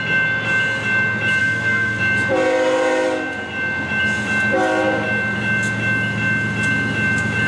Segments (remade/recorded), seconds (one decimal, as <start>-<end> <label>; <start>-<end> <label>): 0.0-1.4 recorded; 1.4-2.0 remade; 2.0-7.5 recorded